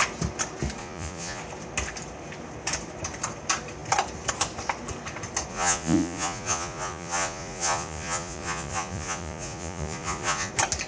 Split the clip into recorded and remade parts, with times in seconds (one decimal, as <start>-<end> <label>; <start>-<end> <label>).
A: 0.0-0.8 recorded; 0.8-1.4 remade; 1.4-5.5 recorded; 5.5-10.5 remade; 10.5-10.9 recorded